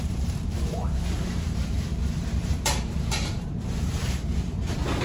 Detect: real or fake fake